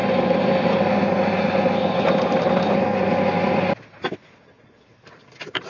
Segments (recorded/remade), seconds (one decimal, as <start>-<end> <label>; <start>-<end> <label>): 0.0-5.7 recorded